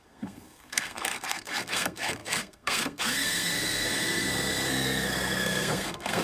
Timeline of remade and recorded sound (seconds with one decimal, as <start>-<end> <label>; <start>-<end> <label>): 0.0-6.2 remade